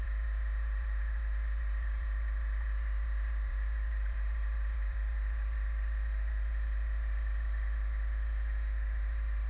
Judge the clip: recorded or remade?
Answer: remade